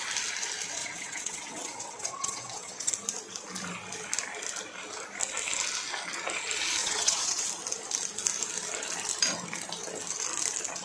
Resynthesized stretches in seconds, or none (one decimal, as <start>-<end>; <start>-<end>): 0.8-2.9; 6.8-7.5